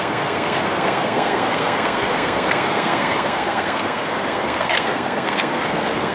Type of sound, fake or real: fake